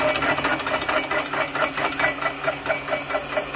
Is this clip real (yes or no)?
yes